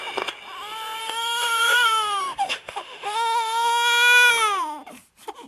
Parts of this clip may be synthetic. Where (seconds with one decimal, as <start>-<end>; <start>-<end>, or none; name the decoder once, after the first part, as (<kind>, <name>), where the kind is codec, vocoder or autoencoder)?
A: 1.0-4.3 (autoencoder, DAC-VAE)